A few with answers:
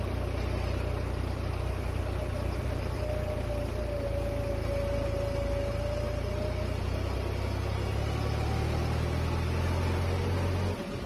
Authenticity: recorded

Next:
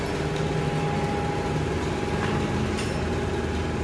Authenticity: recorded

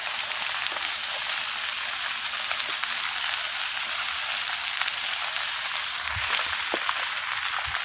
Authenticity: recorded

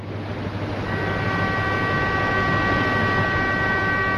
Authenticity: recorded